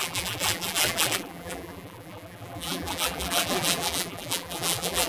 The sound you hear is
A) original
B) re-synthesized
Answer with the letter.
B